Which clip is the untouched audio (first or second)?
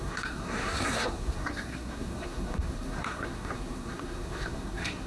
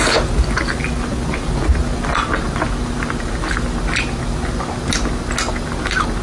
second